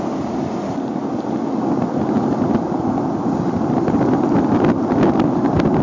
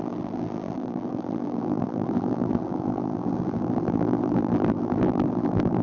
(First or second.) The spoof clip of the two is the second